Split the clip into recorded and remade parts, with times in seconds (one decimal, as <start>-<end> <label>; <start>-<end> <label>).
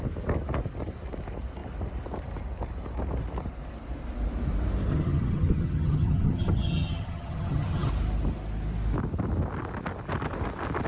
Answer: 0.0-4.9 recorded; 4.9-7.9 remade; 7.9-10.9 recorded